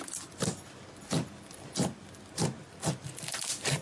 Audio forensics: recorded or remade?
recorded